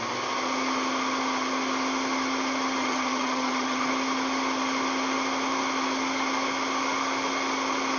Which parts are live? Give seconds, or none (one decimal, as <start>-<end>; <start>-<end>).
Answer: 0.0-2.8; 3.9-8.0